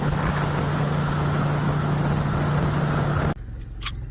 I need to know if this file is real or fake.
real